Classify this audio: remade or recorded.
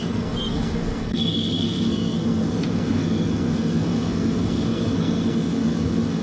remade